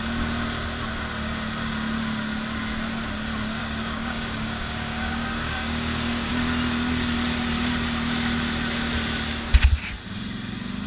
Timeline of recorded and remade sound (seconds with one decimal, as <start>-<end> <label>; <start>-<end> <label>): 0.0-3.6 recorded; 3.6-6.3 remade; 6.3-10.9 recorded